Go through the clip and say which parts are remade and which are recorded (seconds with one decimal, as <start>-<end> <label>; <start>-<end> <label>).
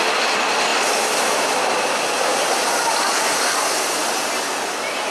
0.0-5.1 recorded